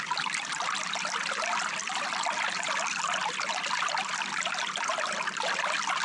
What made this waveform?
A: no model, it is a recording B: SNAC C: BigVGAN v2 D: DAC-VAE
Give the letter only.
A